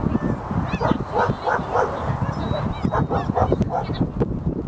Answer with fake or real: real